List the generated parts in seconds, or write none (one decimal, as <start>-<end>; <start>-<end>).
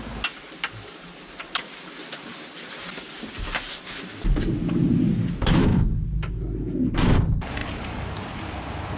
5.7-6.3; 7.6-8.4